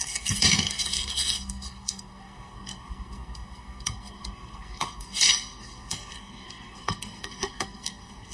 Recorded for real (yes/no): no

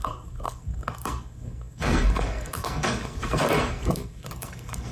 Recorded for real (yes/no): no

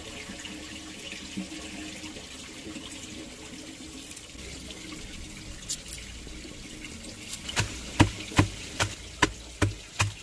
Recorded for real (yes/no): yes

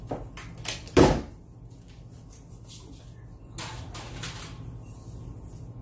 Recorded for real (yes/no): yes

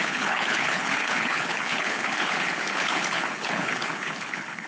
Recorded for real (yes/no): no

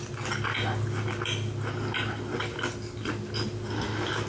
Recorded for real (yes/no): yes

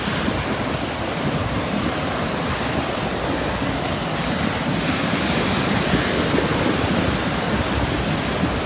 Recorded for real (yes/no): yes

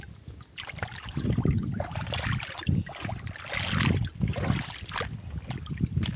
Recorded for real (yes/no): yes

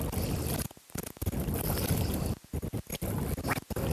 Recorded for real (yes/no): yes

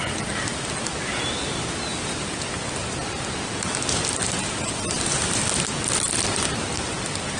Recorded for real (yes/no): yes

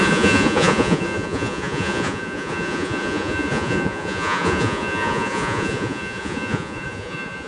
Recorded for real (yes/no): no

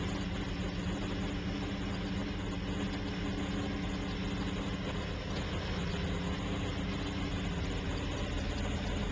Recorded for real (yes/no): yes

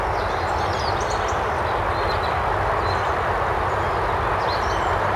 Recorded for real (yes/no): yes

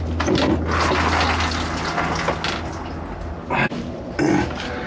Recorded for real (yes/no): yes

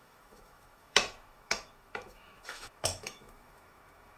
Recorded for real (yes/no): no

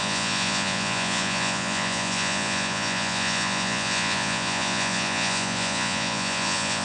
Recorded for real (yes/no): no